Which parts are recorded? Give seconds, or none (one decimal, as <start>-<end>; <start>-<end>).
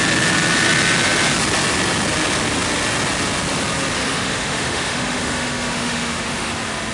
0.0-4.0; 6.5-6.9